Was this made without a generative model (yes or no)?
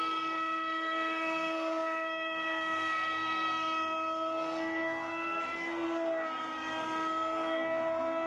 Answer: no